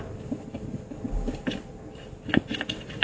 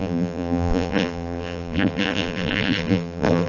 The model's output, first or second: second